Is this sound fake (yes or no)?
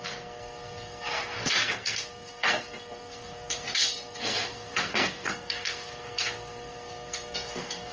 yes